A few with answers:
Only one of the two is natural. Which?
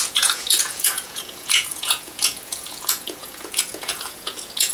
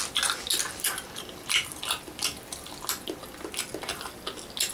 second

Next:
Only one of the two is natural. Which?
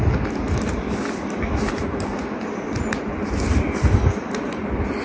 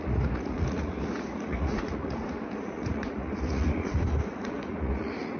first